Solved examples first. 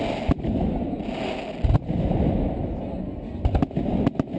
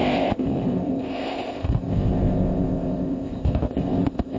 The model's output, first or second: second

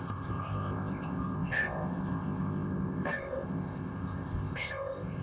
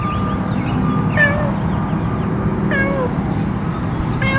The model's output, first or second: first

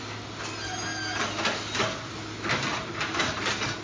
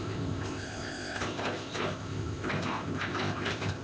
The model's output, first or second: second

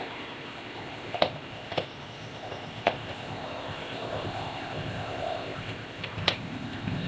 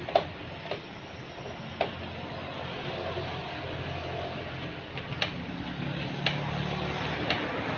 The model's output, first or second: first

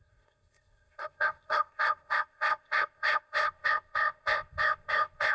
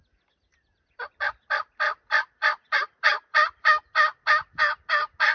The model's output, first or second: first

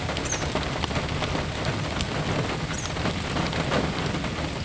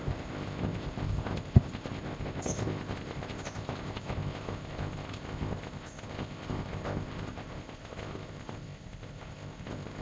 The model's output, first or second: second